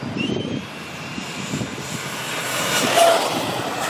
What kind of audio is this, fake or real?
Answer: real